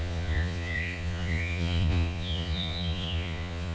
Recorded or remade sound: remade